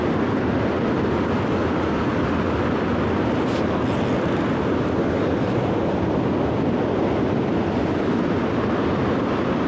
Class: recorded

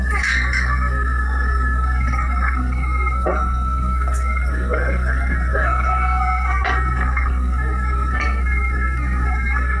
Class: remade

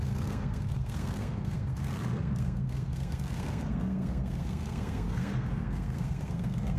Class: remade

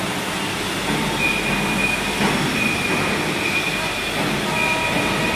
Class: recorded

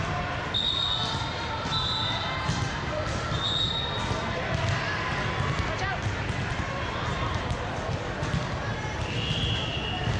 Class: recorded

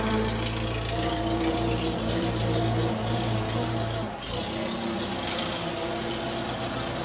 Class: recorded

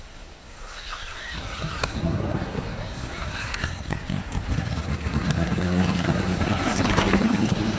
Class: remade